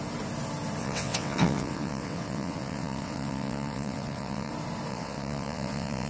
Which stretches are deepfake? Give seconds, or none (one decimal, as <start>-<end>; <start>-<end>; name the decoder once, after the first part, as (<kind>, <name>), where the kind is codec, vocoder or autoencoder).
0.8-4.5 (vocoder, WaveNeXt); 4.9-6.1